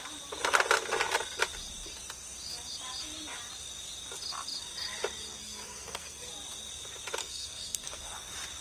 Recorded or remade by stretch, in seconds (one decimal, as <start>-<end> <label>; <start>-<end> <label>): 0.0-5.4 recorded; 5.4-6.3 remade; 6.3-7.2 recorded; 7.2-8.0 remade; 8.0-8.6 recorded